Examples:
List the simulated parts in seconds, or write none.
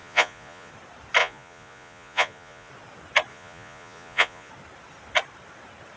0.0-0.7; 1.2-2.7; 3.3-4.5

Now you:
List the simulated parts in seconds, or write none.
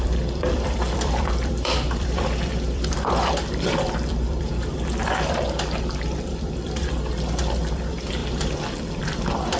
0.0-9.6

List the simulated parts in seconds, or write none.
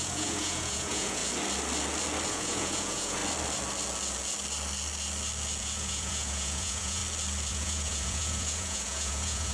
0.0-1.2; 2.3-3.2; 5.6-7.0; 7.5-9.5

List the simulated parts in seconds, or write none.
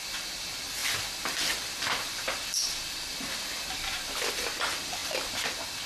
none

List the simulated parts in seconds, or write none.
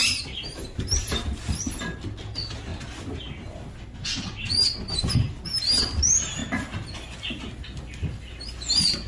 0.0-0.8